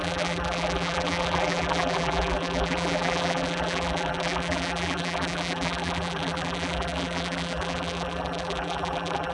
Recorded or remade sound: remade